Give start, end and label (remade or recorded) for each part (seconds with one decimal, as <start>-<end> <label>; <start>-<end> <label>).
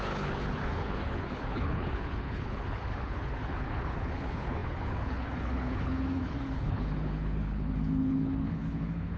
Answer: 0.0-9.2 remade